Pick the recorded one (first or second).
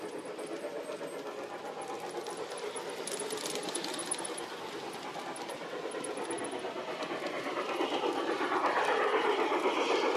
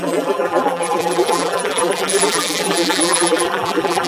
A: first